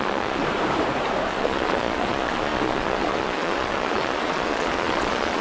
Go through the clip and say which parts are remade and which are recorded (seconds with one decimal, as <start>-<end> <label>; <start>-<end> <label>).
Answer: 0.0-0.4 remade; 0.4-1.3 recorded; 1.3-5.4 remade